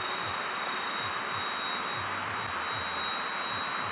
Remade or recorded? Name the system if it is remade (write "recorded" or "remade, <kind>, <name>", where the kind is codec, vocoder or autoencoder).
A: recorded